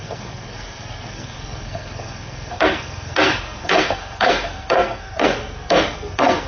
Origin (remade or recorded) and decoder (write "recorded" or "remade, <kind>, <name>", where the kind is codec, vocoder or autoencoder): remade, codec, SNAC